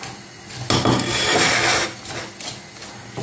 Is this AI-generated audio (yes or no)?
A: no